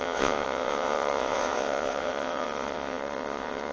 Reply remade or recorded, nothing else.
remade